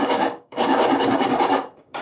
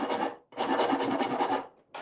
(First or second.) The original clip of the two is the second